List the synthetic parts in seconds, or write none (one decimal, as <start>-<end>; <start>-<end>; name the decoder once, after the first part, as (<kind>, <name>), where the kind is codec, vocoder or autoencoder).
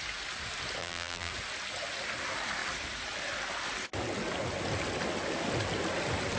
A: 0.8-1.3 (vocoder, BigVGAN v2)